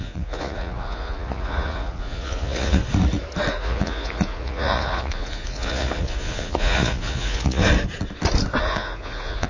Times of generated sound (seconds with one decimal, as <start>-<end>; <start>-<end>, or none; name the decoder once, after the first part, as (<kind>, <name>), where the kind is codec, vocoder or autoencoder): 0.0-2.8 (vocoder, Vocos); 3.5-7.6; 8.6-9.5